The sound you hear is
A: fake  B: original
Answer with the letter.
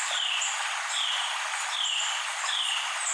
B